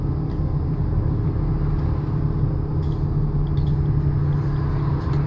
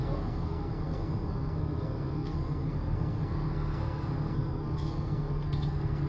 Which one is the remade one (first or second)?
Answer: second